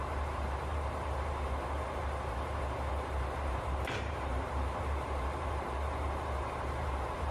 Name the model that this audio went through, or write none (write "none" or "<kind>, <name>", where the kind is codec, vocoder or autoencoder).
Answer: vocoder, BigVGAN v2